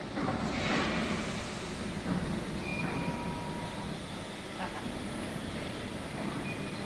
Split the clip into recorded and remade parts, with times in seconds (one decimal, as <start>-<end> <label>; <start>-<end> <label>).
0.0-6.9 recorded